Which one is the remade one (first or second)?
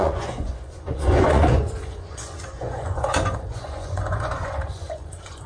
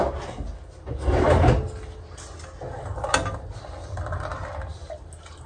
first